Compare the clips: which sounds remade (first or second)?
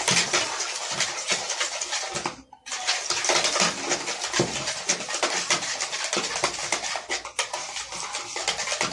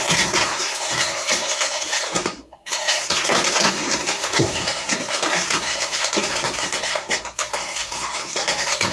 second